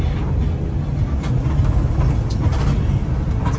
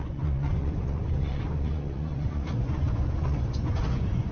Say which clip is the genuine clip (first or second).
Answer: first